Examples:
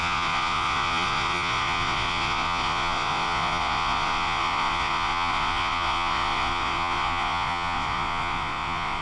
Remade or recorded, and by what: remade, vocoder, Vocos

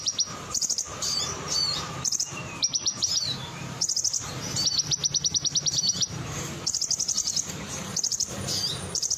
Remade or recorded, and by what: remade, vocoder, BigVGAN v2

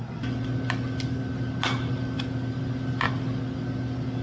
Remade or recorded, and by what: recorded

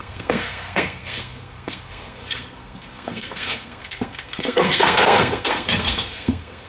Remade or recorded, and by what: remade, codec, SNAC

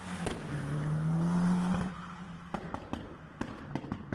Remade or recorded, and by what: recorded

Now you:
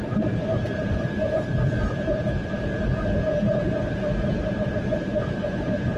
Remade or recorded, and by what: remade, vocoder, BigVGAN v2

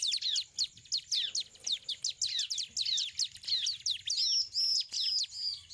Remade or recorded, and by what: recorded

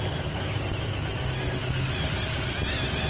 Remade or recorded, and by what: recorded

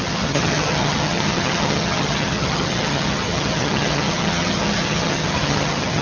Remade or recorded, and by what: remade, vocoder, HiFi-GAN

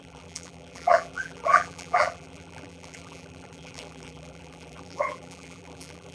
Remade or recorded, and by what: remade, vocoder, BigVGAN v2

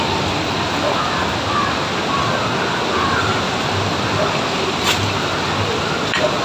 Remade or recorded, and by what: recorded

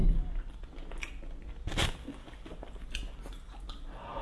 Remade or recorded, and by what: recorded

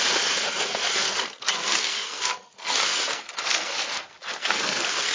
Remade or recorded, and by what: remade, codec, SNAC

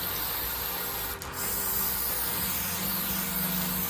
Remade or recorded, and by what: recorded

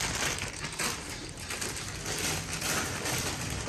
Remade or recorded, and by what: recorded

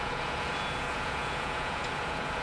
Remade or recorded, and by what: remade, vocoder, Vocos